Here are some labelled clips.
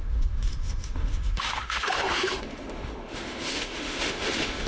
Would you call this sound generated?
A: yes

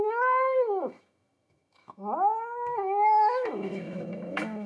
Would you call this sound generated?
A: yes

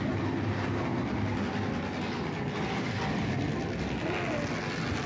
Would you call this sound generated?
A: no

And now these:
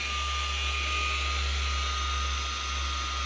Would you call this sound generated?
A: no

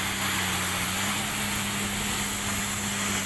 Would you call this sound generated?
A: no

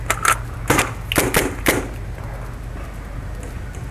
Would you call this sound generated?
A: no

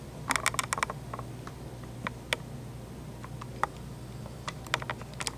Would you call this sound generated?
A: no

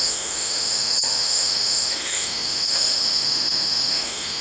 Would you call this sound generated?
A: yes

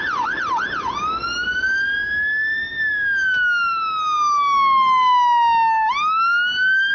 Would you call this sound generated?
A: no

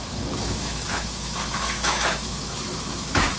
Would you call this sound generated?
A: yes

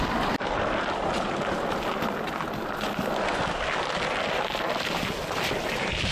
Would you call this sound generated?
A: no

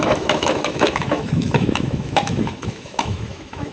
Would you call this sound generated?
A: yes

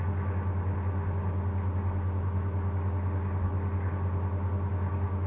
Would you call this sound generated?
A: no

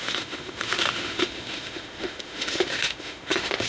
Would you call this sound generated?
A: yes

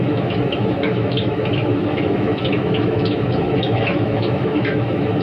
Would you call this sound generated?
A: yes